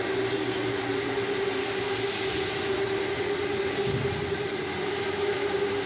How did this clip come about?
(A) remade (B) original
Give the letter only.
B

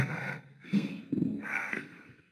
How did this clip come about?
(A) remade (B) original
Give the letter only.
A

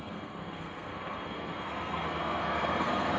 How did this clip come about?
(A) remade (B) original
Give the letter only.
A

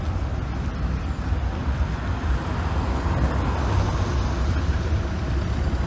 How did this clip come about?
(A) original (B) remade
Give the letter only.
A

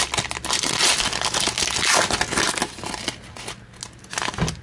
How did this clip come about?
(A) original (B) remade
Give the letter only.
A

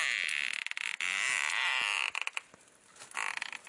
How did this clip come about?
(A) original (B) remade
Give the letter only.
A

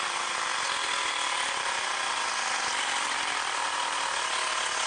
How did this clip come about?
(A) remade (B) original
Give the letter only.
B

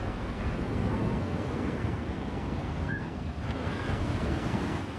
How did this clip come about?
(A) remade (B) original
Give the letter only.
A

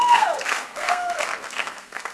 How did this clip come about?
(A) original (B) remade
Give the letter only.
B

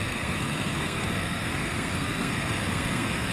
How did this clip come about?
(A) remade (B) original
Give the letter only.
A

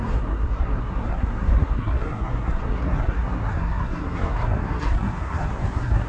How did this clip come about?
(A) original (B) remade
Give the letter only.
B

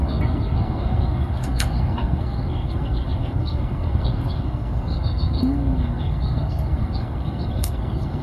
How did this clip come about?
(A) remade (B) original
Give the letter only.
A